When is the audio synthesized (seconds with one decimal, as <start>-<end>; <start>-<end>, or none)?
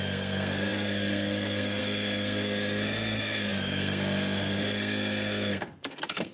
0.0-6.3